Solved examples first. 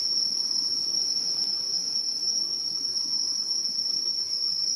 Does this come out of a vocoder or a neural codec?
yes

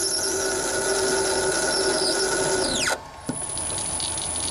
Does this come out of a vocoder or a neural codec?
no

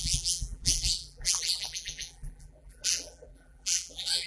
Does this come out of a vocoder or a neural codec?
yes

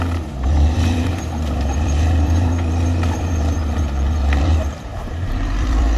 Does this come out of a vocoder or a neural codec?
yes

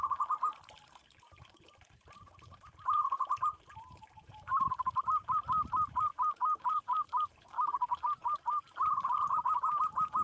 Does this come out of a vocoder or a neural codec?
yes